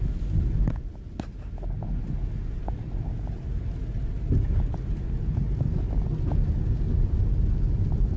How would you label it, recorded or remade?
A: recorded